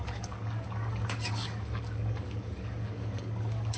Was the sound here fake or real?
fake